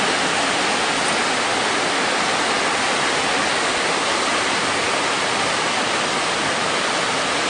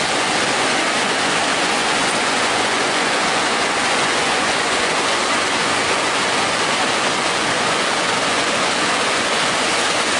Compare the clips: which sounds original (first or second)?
first